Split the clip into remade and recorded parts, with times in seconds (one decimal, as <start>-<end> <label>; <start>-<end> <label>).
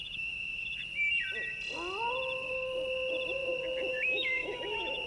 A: 0.0-0.8 remade; 0.8-3.9 recorded; 3.9-5.1 remade